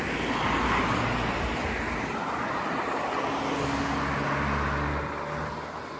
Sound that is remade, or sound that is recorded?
recorded